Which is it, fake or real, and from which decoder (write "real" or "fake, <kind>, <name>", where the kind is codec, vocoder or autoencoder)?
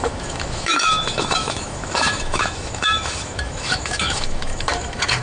fake, autoencoder, DAC-VAE